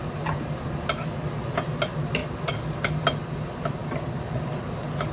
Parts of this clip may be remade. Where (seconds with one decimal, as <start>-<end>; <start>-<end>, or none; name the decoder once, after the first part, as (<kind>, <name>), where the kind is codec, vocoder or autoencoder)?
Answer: none